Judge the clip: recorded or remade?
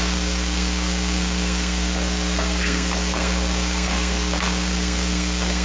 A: remade